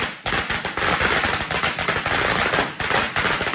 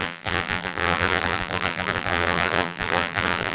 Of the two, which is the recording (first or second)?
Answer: first